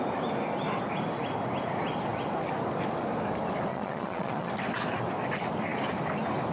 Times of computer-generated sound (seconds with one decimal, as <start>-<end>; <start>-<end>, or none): 3.7-4.5